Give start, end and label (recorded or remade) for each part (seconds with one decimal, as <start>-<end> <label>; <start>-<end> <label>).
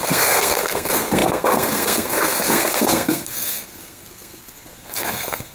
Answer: 0.0-5.5 remade